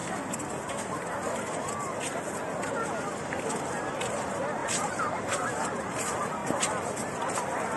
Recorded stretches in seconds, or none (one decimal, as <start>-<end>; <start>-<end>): 0.0-4.6; 5.7-7.8